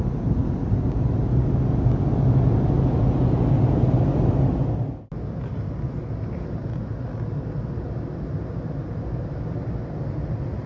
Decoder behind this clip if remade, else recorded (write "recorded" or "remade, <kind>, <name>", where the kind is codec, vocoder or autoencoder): recorded